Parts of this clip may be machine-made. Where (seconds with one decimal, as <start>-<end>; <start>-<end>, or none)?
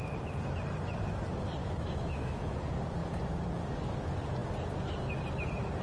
1.6-2.5